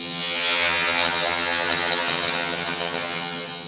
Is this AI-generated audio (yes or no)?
yes